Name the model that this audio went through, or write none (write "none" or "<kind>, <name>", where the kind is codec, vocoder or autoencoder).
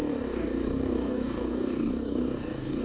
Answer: codec, DAC